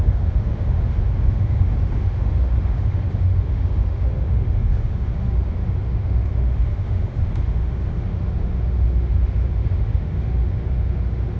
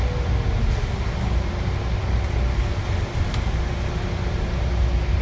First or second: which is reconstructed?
first